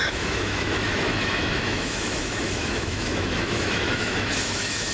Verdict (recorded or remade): remade